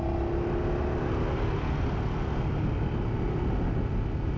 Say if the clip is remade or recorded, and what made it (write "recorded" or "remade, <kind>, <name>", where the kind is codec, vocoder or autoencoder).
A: recorded